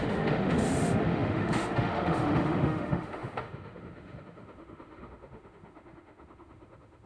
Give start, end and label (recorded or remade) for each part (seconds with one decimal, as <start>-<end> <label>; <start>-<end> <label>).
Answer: 0.0-7.1 remade